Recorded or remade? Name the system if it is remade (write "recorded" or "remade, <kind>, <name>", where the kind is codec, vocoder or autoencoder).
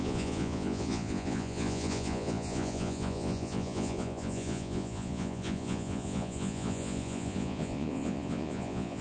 remade, vocoder, Vocos